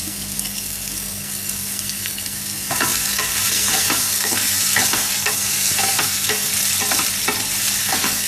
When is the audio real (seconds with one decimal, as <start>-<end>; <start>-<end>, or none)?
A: 6.5-7.8